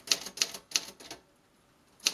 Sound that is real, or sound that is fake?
real